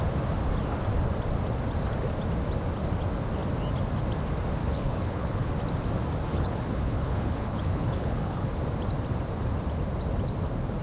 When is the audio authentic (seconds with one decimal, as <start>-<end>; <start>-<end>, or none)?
0.0-4.6; 5.5-6.3; 8.5-10.8